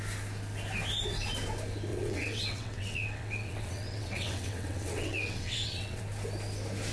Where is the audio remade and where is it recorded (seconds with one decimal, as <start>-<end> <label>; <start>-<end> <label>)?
0.0-1.9 recorded; 1.9-6.0 remade; 6.0-6.9 recorded